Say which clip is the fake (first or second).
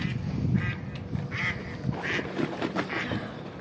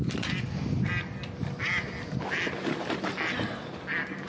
first